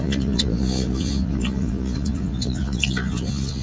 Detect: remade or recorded remade